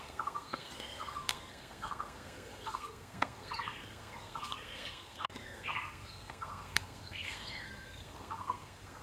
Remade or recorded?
remade